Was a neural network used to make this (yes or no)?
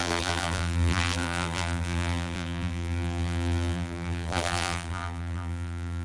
yes